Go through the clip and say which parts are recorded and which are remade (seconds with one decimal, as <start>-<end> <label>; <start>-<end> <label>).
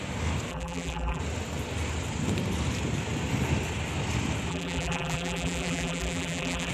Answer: 0.0-0.5 recorded; 0.5-1.2 remade; 1.2-4.5 recorded; 4.5-6.7 remade